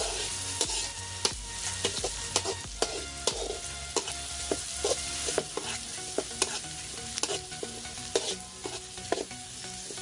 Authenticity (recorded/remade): recorded